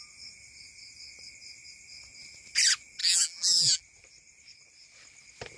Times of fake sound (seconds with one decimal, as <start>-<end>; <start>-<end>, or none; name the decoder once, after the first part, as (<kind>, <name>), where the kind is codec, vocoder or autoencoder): 3.0-3.8 (vocoder, BigVGAN v2)